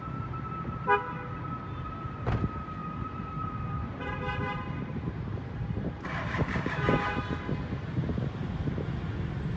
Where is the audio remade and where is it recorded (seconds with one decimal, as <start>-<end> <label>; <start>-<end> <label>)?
0.0-2.8 recorded; 2.8-7.2 remade; 7.2-9.6 recorded